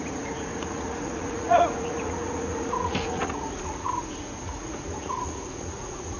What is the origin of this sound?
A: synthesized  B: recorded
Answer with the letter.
A